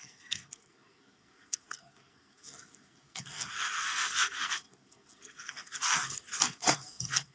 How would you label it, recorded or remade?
remade